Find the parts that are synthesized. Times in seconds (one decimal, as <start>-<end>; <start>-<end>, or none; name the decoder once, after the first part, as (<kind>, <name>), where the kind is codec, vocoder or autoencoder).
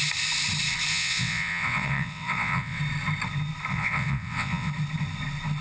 0.9-2.8 (vocoder, WaveNeXt); 3.7-4.7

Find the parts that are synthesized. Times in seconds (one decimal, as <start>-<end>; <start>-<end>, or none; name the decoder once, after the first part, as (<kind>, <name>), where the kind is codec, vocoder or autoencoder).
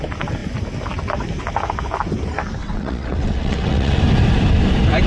2.6-4.0 (vocoder, WaveNeXt)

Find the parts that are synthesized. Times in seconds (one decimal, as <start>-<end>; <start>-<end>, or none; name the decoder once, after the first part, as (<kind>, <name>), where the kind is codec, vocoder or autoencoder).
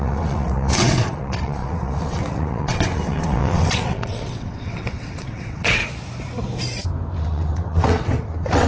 0.0-5.8 (vocoder, WaveNeXt); 7.2-8.7